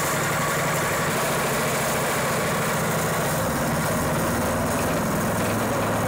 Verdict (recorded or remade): recorded